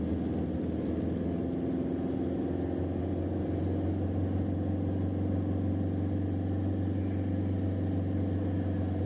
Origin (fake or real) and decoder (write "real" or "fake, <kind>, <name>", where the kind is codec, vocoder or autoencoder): real